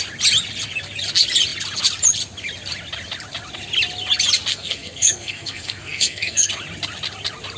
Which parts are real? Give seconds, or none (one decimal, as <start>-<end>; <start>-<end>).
0.0-4.5; 6.5-7.6